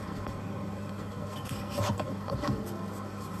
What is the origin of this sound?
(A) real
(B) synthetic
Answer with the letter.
B